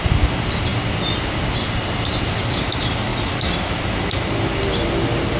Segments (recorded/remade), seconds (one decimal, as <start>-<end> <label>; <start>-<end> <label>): 0.0-5.4 recorded